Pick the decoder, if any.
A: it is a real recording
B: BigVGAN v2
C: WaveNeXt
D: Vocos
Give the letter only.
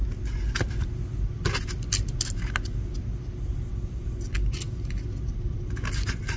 A